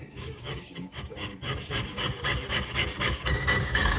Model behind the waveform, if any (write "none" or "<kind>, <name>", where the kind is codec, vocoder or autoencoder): codec, DAC